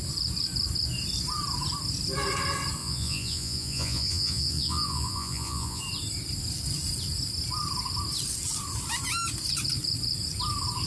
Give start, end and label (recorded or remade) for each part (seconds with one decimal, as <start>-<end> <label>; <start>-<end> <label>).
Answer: 0.0-2.8 recorded; 2.8-5.8 remade; 5.8-10.9 recorded